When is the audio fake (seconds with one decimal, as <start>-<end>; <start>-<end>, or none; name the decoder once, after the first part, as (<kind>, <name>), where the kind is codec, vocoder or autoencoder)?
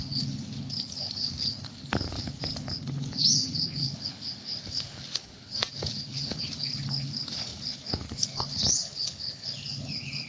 0.0-10.3 (codec, HILCodec)